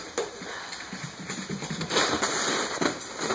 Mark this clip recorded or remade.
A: remade